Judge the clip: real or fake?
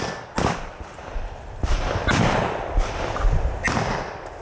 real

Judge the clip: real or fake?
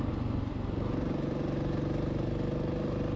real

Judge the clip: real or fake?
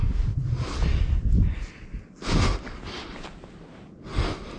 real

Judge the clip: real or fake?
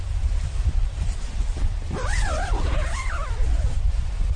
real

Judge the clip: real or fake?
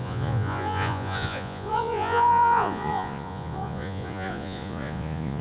fake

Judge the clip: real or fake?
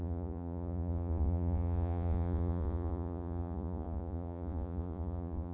fake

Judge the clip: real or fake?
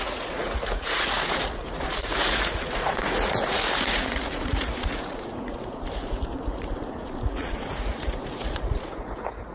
fake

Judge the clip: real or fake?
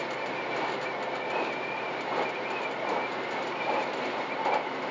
real